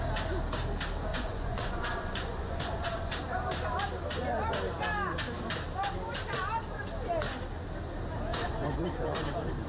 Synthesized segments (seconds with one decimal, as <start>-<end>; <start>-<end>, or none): 1.1-3.1; 8.3-8.9